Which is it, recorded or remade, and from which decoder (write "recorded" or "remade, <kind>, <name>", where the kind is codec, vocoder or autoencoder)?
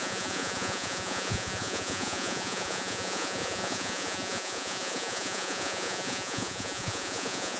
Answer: remade, vocoder, Vocos